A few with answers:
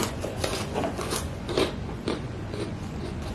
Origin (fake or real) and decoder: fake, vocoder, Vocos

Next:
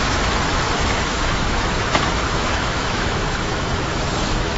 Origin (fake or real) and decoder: fake, autoencoder, DAC-VAE